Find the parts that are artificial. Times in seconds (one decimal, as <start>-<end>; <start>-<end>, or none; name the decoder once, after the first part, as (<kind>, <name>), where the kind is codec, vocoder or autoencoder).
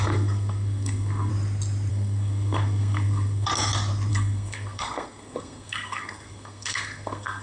0.0-1.3 (codec, SNAC); 1.9-3.5; 4.1-7.4